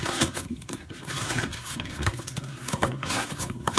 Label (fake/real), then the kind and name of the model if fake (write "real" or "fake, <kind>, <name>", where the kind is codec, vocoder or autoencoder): fake, codec, SNAC